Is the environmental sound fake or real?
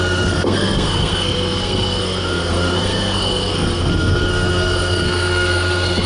fake